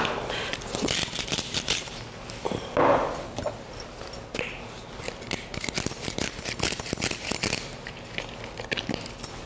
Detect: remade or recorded recorded